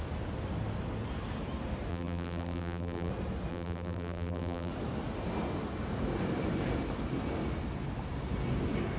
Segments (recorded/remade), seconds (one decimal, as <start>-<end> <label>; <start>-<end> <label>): 0.0-1.9 recorded; 1.9-3.1 remade; 3.1-3.5 recorded; 3.5-4.7 remade; 4.7-9.0 recorded